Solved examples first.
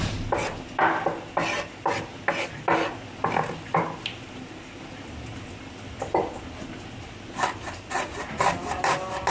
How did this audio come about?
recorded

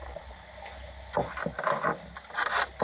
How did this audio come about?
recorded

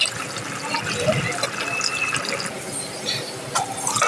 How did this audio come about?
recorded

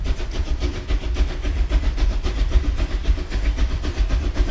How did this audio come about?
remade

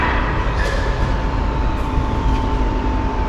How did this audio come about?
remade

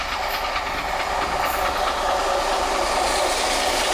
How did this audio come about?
recorded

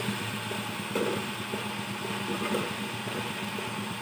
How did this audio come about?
remade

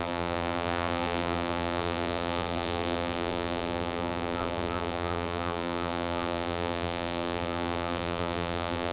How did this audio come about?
remade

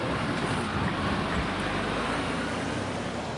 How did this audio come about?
remade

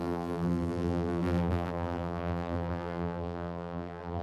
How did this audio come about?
remade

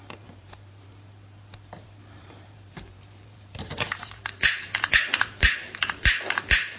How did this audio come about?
remade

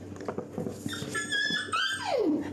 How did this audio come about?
recorded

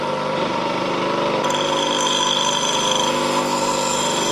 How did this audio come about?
remade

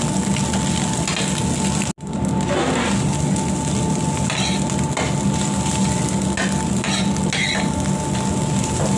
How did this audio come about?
recorded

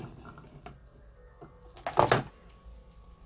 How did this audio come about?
recorded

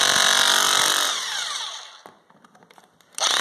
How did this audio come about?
remade